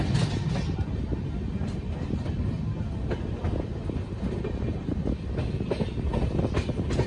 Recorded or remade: recorded